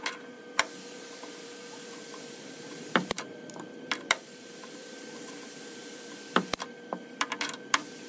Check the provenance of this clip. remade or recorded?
remade